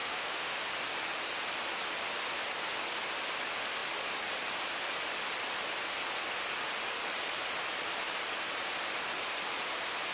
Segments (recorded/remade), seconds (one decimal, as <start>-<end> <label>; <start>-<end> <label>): 0.0-0.6 remade; 0.6-10.1 recorded